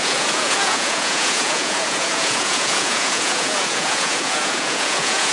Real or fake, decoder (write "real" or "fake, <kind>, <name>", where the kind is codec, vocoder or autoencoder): fake, vocoder, Vocos